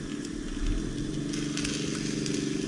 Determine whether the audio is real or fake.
real